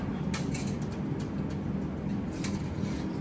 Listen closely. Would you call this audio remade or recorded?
recorded